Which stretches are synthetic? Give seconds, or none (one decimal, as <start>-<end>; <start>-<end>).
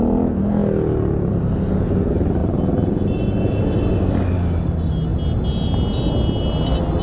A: 2.4-3.7